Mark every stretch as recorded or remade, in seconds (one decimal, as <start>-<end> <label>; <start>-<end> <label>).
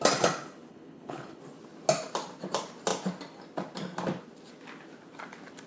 0.0-0.7 recorded; 0.7-1.4 remade; 1.4-5.7 recorded